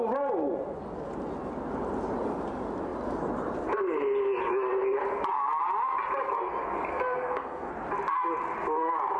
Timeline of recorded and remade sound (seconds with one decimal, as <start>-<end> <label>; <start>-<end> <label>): 0.0-6.9 recorded; 6.9-7.7 remade; 7.7-9.2 recorded